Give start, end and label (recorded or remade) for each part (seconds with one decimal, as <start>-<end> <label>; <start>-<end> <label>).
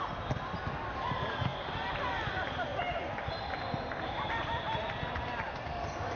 0.0-6.2 recorded